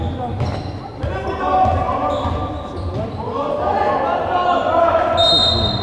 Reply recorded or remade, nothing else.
recorded